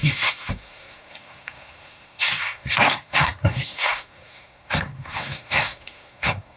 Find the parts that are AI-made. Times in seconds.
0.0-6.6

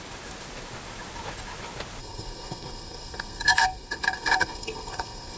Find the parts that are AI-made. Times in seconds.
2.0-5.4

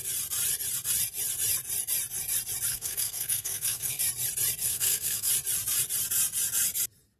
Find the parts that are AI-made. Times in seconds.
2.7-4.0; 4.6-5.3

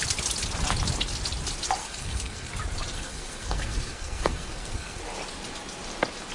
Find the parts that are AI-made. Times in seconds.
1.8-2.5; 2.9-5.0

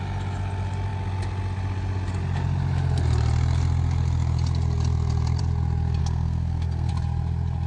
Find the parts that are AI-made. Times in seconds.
6.0-6.9